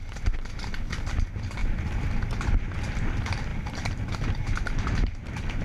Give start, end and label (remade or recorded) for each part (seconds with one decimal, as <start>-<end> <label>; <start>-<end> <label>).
0.0-5.6 recorded